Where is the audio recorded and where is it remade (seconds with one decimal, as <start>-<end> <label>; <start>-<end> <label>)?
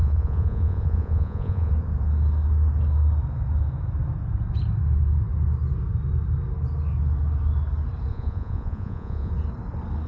0.0-1.7 remade; 1.7-8.1 recorded; 8.1-9.3 remade; 9.3-10.1 recorded